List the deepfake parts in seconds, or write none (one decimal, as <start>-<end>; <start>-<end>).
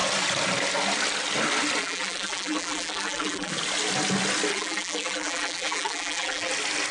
1.8-3.5; 4.5-6.5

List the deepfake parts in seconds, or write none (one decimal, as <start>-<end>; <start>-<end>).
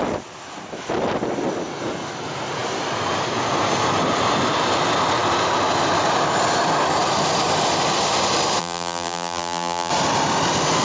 8.6-9.9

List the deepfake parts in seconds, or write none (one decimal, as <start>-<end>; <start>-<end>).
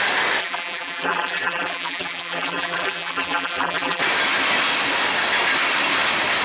0.4-4.0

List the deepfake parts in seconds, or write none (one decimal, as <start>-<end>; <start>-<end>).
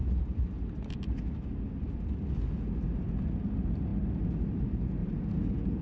5.0-5.8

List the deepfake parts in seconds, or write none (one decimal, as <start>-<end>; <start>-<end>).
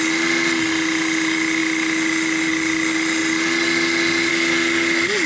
none